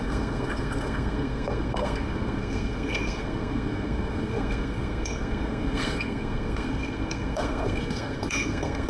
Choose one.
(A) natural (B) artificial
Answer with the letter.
B